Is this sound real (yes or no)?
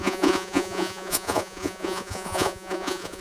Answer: no